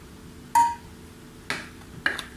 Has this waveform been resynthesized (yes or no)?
no